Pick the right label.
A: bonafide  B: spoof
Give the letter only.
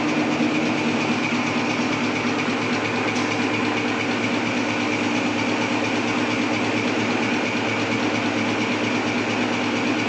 A